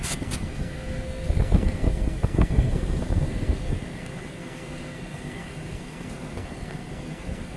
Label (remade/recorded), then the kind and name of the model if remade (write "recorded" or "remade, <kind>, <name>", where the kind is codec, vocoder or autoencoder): remade, codec, SNAC